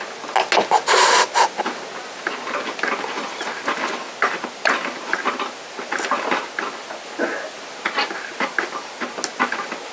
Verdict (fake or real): real